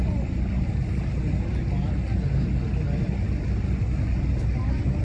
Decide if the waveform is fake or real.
real